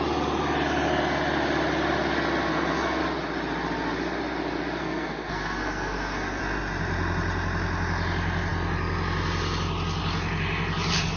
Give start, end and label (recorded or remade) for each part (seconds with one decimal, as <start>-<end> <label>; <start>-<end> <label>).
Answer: 0.0-2.5 recorded; 2.5-3.0 remade; 3.0-4.8 recorded; 4.8-6.4 remade; 6.4-11.2 recorded